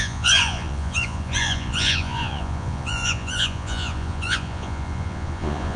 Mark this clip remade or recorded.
remade